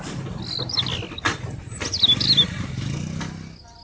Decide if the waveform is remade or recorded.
recorded